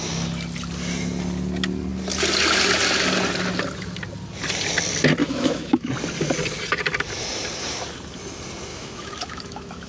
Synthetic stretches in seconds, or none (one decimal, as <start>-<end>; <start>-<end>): 5.2-5.9; 8.7-9.9